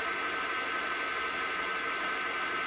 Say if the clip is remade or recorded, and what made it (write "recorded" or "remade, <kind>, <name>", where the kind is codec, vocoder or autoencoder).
recorded